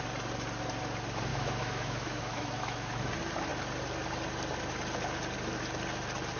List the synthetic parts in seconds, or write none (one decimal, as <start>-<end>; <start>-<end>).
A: 1.3-3.1